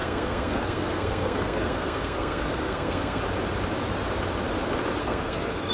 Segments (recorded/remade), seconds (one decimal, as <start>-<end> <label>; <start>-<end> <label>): 0.0-3.2 remade; 3.2-5.0 recorded; 5.0-5.7 remade